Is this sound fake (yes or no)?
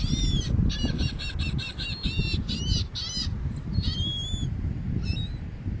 no